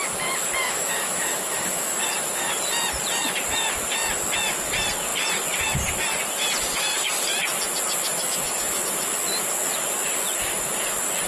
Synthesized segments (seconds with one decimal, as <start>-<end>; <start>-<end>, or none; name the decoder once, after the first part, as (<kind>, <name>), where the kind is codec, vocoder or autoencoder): 0.6-2.5 (autoencoder, DAC-VAE); 8.1-8.8